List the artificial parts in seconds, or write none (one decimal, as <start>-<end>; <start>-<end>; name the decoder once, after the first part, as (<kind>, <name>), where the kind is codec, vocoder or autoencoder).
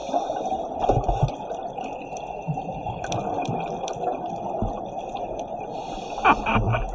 none